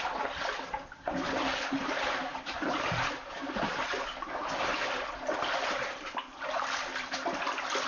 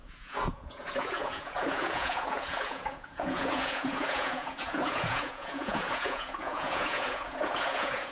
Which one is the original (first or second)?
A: first